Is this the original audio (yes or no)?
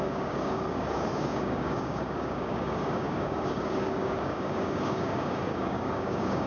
no